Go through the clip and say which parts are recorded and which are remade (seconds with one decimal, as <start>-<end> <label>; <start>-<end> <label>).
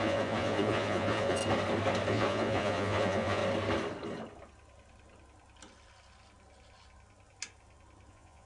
0.0-1.4 remade; 1.4-2.1 recorded; 2.1-3.4 remade; 3.4-8.1 recorded; 8.1-8.5 remade